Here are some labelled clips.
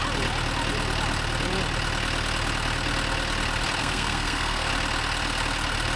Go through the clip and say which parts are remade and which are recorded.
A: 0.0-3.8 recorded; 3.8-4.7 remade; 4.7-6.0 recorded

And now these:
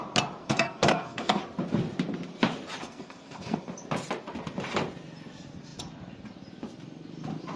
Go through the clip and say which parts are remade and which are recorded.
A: 0.0-0.4 recorded; 0.4-1.4 remade; 1.4-2.8 recorded; 2.8-3.7 remade; 3.7-7.6 recorded